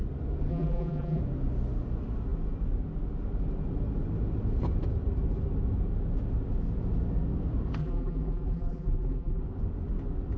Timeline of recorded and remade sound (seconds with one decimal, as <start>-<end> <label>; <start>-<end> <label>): 0.0-0.5 recorded; 0.5-1.2 remade; 1.2-7.8 recorded; 7.8-9.4 remade; 9.4-10.4 recorded